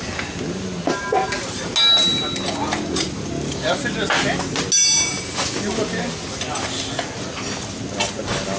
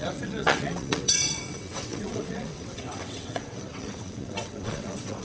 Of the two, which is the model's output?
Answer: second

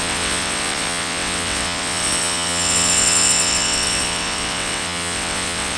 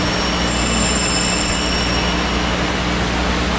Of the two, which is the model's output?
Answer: first